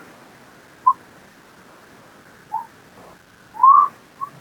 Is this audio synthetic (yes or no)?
no